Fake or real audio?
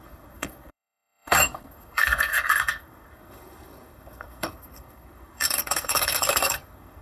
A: fake